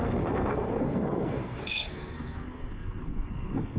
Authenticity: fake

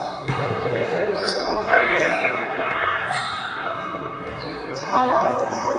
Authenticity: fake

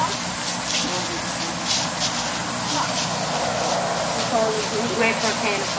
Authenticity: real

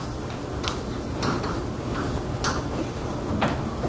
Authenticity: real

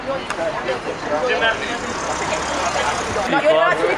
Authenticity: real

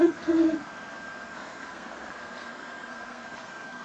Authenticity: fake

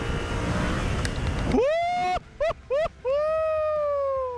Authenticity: real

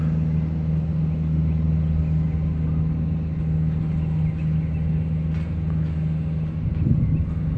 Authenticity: real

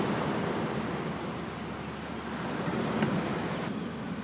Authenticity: real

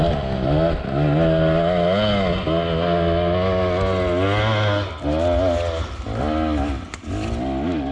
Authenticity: real